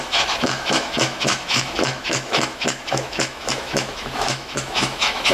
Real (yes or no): no